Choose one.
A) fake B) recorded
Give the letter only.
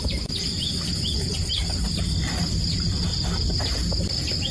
B